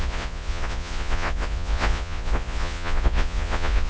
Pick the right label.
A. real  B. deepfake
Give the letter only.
B